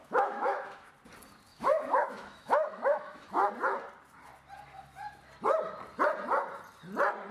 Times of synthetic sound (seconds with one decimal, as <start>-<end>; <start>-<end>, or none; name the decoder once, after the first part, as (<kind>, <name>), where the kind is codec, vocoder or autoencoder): 0.0-0.9 (autoencoder, DAC-VAE); 1.5-3.5